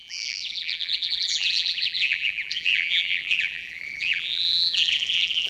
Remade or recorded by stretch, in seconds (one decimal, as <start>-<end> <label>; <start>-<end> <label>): 0.0-5.5 remade

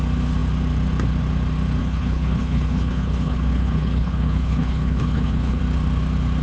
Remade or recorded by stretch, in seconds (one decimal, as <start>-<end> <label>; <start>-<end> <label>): 0.0-1.8 recorded; 1.8-5.6 remade; 5.6-6.4 recorded

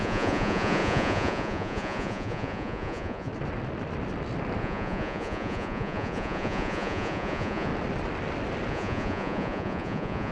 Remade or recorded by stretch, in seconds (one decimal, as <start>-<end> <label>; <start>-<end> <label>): 0.0-3.3 remade; 3.3-4.6 recorded; 4.6-7.7 remade; 7.7-8.7 recorded; 8.7-10.3 remade

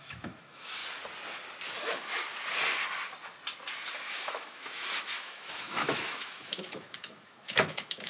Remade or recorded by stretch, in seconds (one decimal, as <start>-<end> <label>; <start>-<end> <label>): 0.0-0.8 remade; 0.8-1.8 recorded; 1.8-2.3 remade; 2.3-3.9 recorded; 3.9-8.1 remade